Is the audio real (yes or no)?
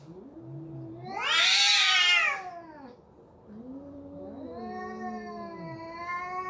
yes